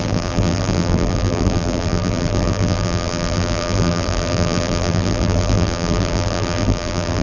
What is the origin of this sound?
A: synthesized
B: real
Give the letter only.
A